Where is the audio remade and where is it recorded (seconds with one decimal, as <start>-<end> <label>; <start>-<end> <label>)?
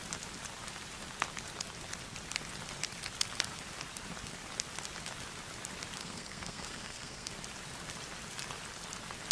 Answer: 0.0-6.0 recorded; 6.0-7.3 remade; 7.3-9.3 recorded